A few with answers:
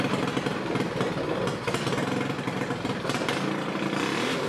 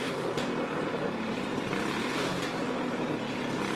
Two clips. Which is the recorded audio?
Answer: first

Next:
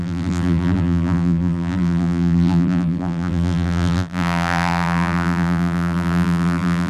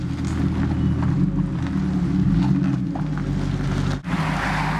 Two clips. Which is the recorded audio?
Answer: second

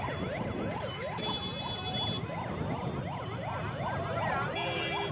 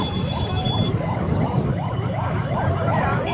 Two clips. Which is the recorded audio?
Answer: first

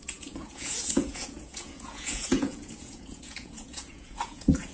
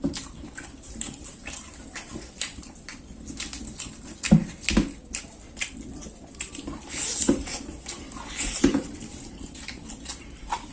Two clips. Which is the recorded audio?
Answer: second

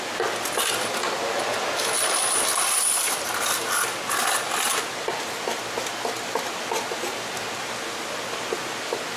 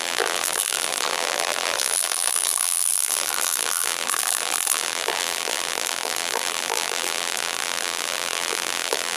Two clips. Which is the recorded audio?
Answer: first